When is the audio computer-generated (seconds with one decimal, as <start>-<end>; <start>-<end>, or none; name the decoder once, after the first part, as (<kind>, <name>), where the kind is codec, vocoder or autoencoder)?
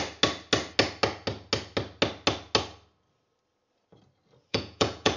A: 4.5-5.2 (vocoder, Vocos)